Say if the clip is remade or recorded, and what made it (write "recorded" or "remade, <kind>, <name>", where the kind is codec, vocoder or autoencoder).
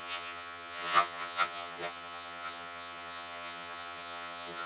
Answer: remade, vocoder, HiFi-GAN